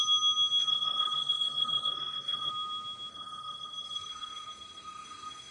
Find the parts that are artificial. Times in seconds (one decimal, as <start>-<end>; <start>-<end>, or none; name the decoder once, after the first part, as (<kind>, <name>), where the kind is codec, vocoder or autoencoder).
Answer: 0.6-2.5 (codec, SNAC); 3.1-5.5